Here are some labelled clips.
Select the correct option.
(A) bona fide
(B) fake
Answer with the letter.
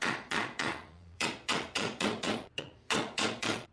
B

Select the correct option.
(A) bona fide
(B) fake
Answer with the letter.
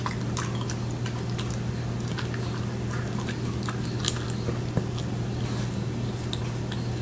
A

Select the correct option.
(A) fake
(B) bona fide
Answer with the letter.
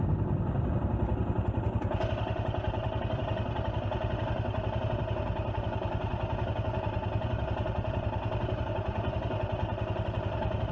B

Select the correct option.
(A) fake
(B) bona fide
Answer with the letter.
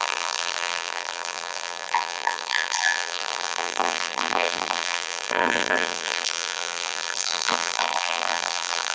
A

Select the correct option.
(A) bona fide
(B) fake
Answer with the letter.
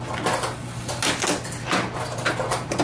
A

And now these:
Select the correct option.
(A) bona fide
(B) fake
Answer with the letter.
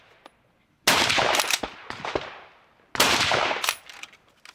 A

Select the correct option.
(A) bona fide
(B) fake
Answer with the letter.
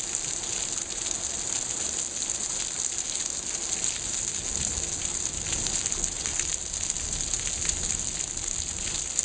A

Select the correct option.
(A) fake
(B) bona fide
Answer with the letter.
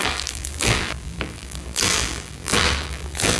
A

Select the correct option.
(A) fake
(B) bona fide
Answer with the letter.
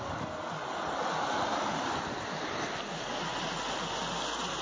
B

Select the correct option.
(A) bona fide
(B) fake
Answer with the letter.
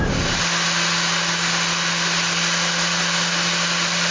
A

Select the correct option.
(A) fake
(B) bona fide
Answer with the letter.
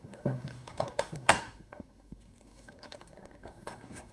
A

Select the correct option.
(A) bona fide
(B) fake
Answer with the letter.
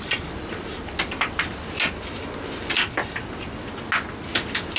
A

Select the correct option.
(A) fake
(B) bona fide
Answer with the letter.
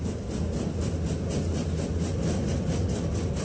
B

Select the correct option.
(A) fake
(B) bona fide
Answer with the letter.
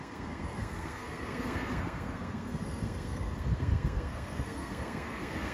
A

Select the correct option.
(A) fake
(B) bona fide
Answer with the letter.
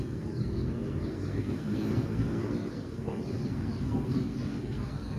A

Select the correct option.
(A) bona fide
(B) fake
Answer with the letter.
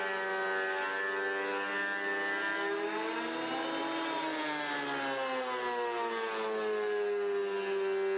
A